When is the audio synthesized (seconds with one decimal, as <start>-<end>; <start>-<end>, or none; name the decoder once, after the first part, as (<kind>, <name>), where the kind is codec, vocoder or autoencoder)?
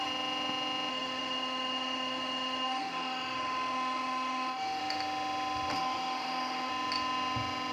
0.9-4.8 (autoencoder, DAC-VAE); 5.7-6.7